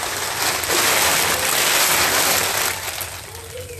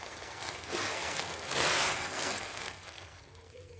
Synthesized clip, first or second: second